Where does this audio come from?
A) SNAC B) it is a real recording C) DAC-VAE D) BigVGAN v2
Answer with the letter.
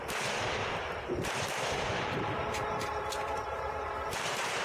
D